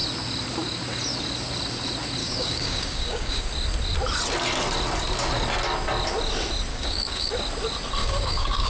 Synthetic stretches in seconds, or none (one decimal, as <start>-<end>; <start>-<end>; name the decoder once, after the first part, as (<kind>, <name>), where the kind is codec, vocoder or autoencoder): 2.2-3.5 (codec, DAC); 6.7-7.3; 8.0-8.7